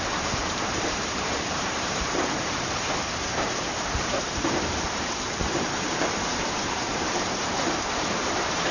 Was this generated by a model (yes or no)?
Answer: yes